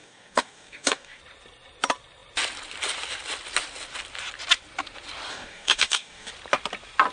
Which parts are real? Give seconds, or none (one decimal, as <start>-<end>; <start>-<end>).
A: 1.2-5.3; 6.3-7.1